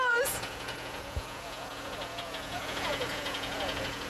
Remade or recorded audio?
remade